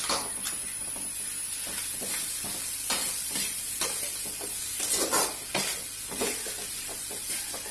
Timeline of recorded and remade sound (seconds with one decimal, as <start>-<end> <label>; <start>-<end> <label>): 0.0-3.0 recorded; 3.0-3.6 remade; 3.6-7.7 recorded